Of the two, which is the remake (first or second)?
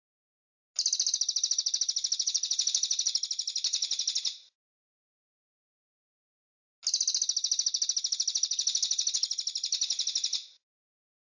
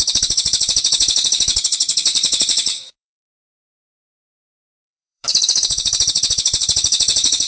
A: second